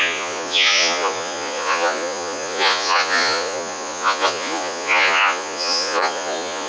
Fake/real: fake